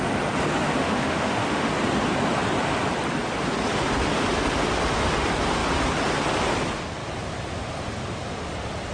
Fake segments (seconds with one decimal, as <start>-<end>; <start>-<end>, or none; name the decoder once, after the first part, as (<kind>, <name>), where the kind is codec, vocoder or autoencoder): 0.8-1.7 (autoencoder, DAC-VAE)